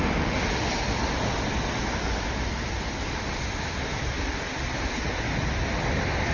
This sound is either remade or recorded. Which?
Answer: recorded